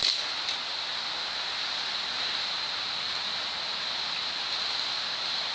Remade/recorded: recorded